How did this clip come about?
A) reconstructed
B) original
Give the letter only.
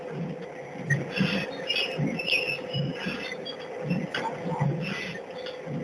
B